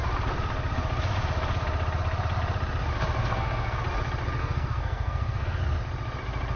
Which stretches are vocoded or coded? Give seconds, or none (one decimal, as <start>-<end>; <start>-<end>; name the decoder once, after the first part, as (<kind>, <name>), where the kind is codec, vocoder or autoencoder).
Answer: 3.2-3.8 (codec, SNAC); 4.4-5.6